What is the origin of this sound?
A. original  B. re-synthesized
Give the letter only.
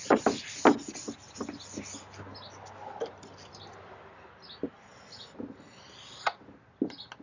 A